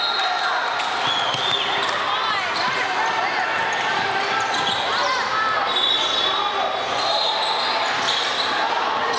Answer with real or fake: real